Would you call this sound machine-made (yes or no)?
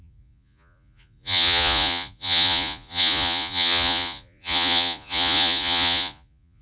yes